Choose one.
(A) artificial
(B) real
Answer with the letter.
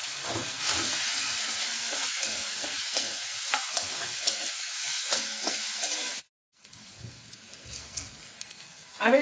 A